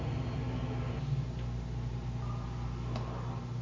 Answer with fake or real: real